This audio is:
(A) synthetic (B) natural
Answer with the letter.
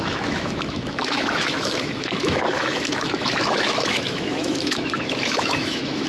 A